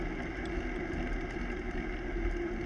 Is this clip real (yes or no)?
yes